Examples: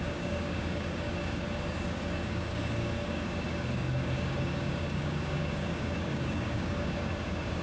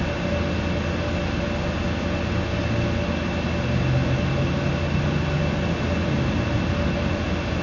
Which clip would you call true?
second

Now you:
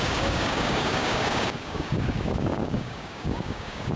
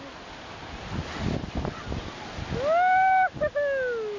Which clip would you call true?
second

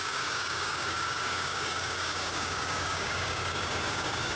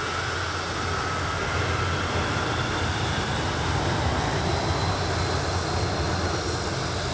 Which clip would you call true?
second